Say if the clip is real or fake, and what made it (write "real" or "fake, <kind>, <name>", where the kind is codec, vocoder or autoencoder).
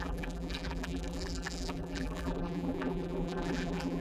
fake, vocoder, BigVGAN v2